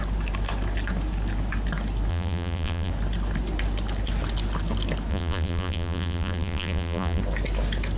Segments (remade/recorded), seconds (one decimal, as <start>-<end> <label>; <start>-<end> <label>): 0.0-2.1 recorded; 2.1-2.9 remade; 2.9-5.1 recorded; 5.1-7.2 remade; 7.2-8.0 recorded